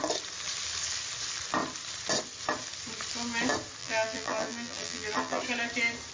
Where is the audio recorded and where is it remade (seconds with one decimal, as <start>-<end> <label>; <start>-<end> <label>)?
0.0-3.8 recorded; 3.8-5.4 remade; 5.4-6.1 recorded